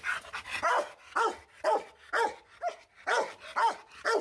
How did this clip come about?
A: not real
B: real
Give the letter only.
B